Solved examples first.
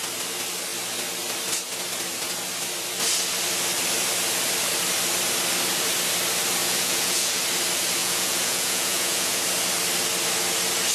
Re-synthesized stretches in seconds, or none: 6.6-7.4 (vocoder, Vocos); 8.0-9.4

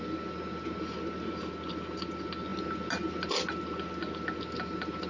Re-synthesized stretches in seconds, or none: none

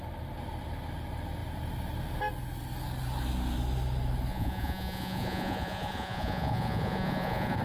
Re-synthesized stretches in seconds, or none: 4.3-7.6 (vocoder, Vocos)

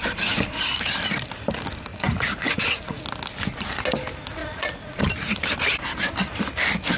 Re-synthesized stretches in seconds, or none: 1.9-3.0 (vocoder, Vocos); 4.4-5.0

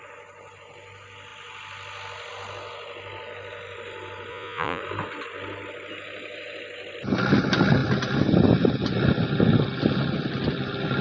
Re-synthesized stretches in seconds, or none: 4.3-4.8 (vocoder, Vocos)